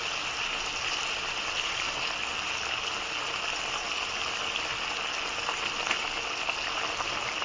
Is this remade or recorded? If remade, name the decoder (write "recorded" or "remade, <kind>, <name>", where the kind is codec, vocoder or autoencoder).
recorded